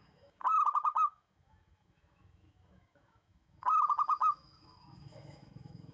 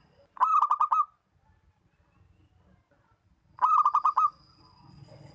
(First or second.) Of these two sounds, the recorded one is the second